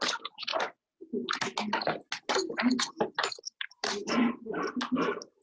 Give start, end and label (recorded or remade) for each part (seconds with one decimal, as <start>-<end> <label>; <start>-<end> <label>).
0.0-4.0 recorded; 4.0-4.5 remade; 4.5-5.4 recorded